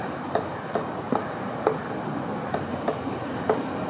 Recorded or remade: recorded